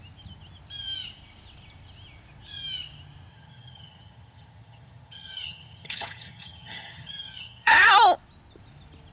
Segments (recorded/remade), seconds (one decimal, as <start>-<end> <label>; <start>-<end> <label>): 0.0-3.3 recorded; 3.3-7.9 remade; 7.9-9.1 recorded